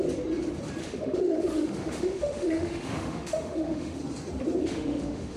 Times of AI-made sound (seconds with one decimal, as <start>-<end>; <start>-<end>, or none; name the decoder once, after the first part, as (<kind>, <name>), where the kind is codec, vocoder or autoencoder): 0.8-4.0 (autoencoder, DAC-VAE); 4.6-5.4